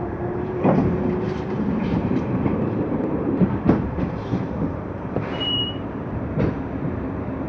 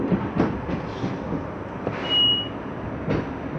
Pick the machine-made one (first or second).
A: first